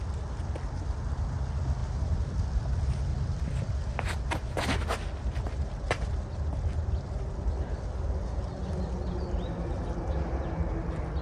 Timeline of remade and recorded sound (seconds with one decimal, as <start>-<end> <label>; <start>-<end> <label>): 0.0-1.8 recorded; 1.8-2.4 remade; 2.4-3.1 recorded; 3.1-4.6 remade; 4.6-11.2 recorded